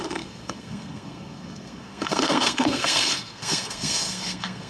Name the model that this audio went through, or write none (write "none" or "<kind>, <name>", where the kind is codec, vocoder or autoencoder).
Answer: codec, SNAC